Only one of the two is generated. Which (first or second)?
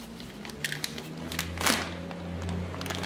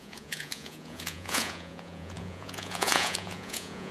second